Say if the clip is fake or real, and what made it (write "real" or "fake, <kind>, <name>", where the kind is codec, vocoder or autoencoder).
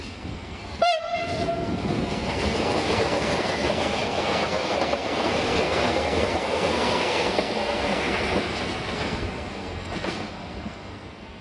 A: fake, codec, SNAC